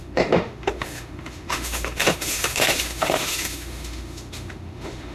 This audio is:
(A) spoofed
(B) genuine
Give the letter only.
A